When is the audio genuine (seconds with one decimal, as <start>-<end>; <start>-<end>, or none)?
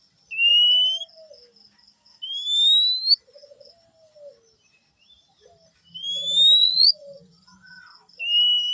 0.0-6.6; 7.8-8.7